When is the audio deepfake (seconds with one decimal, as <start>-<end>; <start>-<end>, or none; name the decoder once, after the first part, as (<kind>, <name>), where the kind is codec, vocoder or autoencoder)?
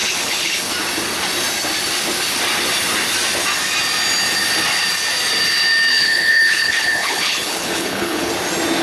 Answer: 0.0-0.7 (codec, HILCodec); 5.9-8.3